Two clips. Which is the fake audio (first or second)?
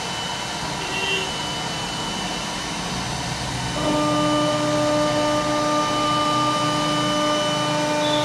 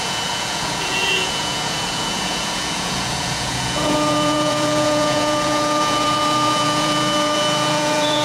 second